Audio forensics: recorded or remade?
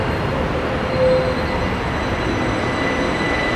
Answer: recorded